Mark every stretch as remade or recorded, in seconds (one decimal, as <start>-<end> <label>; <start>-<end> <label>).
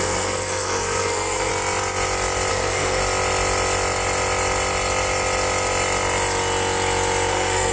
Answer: 0.0-1.5 remade; 1.5-2.5 recorded; 2.5-3.0 remade; 3.0-7.3 recorded; 7.3-7.7 remade